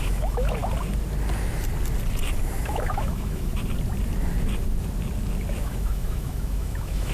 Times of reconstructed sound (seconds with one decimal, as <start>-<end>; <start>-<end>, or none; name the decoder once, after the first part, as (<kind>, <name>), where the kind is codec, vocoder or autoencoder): 0.0-0.6 (autoencoder, DAC-VAE); 2.6-3.5; 5.6-7.1